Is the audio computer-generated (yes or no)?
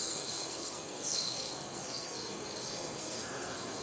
yes